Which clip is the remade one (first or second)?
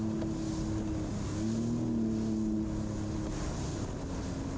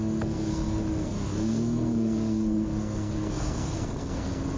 second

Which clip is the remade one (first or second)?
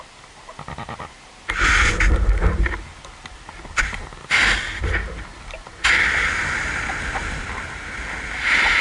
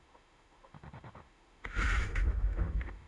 second